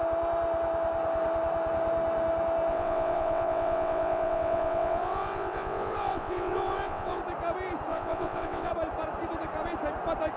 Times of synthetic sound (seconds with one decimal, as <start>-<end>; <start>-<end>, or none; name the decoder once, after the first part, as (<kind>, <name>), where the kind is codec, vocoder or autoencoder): 2.7-7.2 (vocoder, WaveNeXt); 7.9-8.7